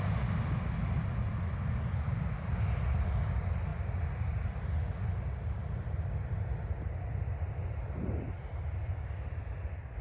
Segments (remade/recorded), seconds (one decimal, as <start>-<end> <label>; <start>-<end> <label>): 0.0-10.0 recorded